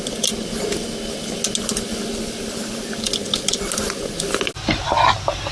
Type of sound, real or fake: real